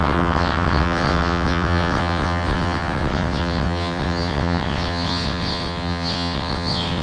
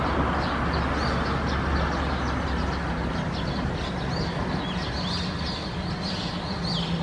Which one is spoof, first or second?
first